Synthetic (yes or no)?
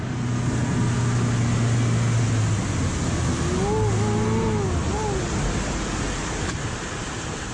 no